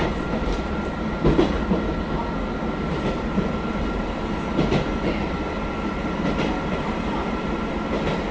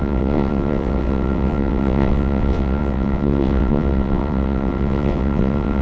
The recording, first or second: first